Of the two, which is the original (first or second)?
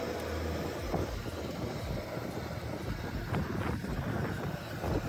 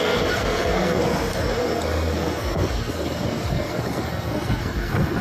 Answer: first